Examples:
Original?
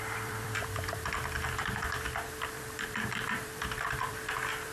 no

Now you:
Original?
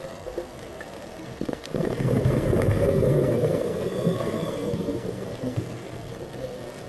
no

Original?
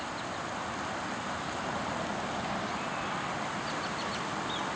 yes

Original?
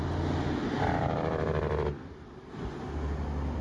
no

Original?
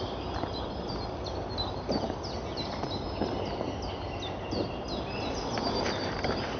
yes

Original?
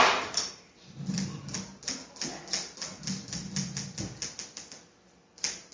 yes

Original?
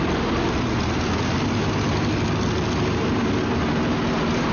yes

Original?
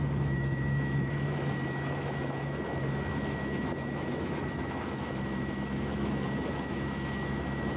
no